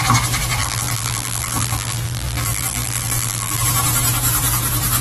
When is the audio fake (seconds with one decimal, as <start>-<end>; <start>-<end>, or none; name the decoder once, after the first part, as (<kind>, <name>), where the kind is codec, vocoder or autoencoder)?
0.6-3.6 (vocoder, BigVGAN v2)